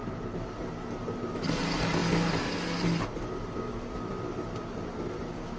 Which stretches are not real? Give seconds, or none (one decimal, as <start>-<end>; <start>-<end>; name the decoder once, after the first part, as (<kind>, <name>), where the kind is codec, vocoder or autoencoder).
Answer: 0.0-2.0 (vocoder, BigVGAN v2); 3.1-5.6